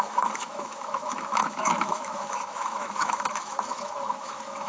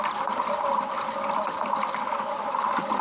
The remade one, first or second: first